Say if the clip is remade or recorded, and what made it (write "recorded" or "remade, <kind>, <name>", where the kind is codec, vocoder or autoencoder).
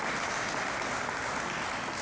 recorded